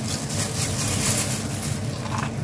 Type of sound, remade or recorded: recorded